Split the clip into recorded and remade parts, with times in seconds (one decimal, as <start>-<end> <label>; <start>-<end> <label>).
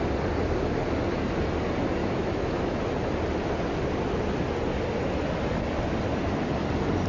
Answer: 0.0-2.0 recorded; 2.0-2.8 remade; 2.8-7.1 recorded